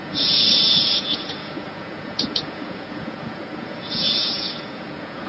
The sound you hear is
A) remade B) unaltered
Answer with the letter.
A